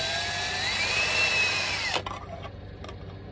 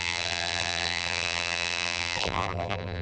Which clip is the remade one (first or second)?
second